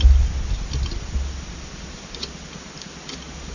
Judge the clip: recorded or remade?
recorded